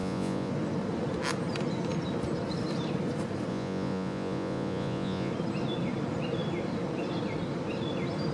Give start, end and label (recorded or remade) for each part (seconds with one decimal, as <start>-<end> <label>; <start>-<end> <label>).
0.0-0.5 remade; 0.5-3.5 recorded; 3.5-5.3 remade; 5.3-8.3 recorded

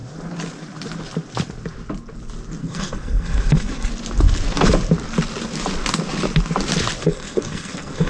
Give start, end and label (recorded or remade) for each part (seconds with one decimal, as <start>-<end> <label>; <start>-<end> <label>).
0.0-2.6 recorded; 2.6-3.9 remade; 3.9-7.0 recorded; 7.0-8.1 remade

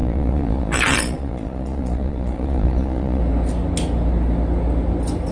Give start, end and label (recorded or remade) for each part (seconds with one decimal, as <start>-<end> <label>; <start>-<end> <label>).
0.0-3.2 remade; 3.2-5.3 recorded

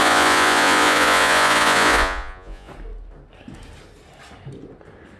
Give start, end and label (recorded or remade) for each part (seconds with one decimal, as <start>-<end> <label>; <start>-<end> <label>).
0.0-2.7 remade; 2.7-5.2 recorded